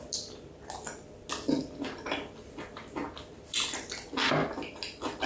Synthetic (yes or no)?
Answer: no